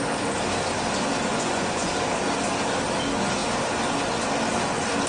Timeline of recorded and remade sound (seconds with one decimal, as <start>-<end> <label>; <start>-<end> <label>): 0.0-1.3 recorded; 1.3-1.9 remade; 1.9-5.1 recorded